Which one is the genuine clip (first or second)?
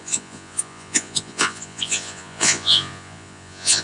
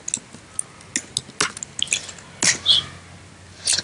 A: second